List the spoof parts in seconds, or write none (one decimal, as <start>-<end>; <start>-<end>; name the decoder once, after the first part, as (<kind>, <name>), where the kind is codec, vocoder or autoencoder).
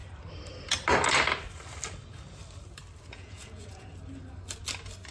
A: 3.1-3.9 (vocoder, Vocos)